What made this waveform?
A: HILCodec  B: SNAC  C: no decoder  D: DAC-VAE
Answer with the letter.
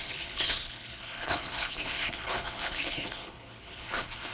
A